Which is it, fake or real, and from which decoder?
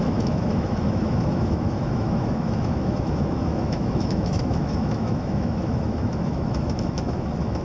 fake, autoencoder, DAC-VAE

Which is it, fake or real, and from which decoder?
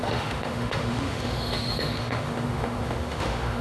fake, autoencoder, DAC-VAE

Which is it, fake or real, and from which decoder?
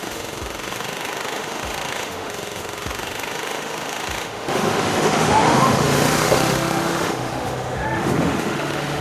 fake, autoencoder, DAC-VAE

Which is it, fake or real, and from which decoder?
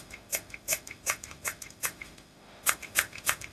fake, autoencoder, DAC-VAE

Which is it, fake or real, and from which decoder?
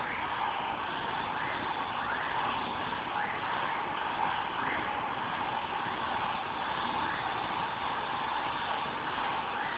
real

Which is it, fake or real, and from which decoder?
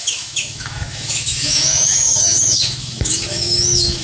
fake, autoencoder, DAC-VAE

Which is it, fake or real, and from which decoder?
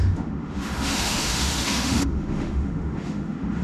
fake, autoencoder, DAC-VAE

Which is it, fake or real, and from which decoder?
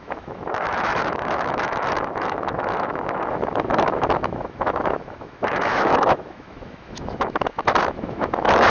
fake, autoencoder, DAC-VAE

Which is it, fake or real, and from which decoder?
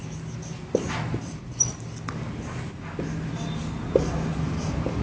real